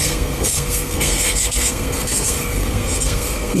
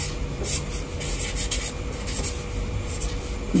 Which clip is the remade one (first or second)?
first